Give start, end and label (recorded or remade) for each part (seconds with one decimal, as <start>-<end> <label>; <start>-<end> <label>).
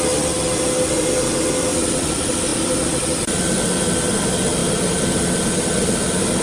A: 0.0-6.4 recorded